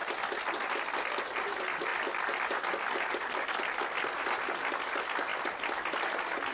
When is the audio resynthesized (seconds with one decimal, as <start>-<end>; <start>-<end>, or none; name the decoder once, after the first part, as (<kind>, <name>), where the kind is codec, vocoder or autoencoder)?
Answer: none